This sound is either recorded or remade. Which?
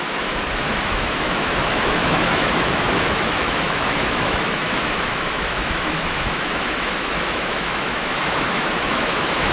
remade